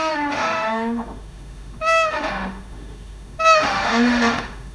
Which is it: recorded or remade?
remade